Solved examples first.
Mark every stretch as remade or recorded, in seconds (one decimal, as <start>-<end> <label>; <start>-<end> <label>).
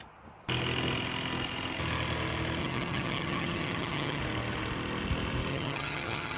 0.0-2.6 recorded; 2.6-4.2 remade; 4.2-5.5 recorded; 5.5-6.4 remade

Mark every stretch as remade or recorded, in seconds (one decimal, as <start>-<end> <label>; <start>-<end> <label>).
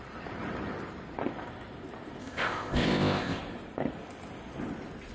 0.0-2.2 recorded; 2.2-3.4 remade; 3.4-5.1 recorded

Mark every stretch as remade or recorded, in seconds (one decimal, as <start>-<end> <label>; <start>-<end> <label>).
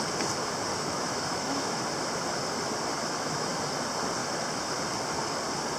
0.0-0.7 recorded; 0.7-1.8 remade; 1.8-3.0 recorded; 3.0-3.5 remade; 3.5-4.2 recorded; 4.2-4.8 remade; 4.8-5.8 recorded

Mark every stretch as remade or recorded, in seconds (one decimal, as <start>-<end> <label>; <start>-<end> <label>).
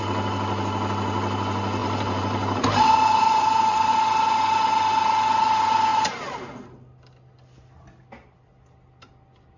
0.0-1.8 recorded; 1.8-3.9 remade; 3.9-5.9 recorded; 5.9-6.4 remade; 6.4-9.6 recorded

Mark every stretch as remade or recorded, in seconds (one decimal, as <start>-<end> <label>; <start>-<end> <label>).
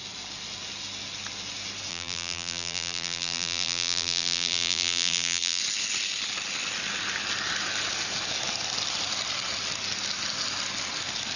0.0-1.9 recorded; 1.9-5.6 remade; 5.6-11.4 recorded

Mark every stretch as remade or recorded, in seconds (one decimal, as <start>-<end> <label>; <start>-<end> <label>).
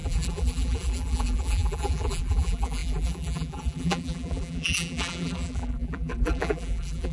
0.0-7.1 remade